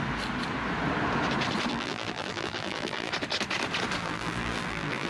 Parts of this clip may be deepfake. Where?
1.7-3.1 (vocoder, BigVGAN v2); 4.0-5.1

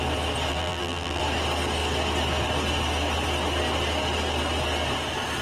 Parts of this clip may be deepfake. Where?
0.5-1.2 (vocoder, BigVGAN v2)

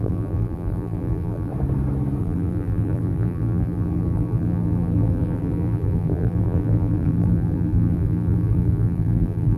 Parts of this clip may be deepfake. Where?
0.0-1.5 (vocoder, BigVGAN v2); 2.2-9.6

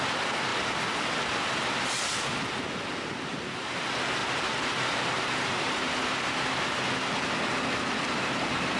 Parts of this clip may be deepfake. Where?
4.2-6.1 (vocoder, BigVGAN v2)

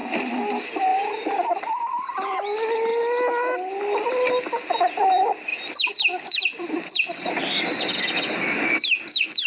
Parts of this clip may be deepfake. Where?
0.9-2.1 (vocoder, BigVGAN v2); 5.5-8.0

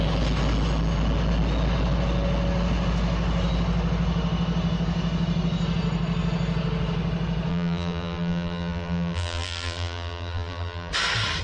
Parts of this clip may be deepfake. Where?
7.5-10.9 (vocoder, BigVGAN v2)

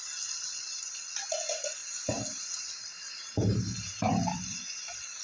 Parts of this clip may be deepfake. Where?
1.8-5.2 (vocoder, BigVGAN v2)